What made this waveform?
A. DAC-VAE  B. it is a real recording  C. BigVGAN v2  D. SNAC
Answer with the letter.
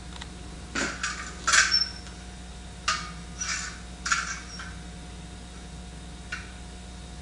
B